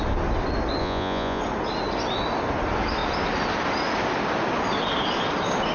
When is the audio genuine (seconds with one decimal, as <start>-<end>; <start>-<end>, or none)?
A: 0.0-0.8; 1.4-5.7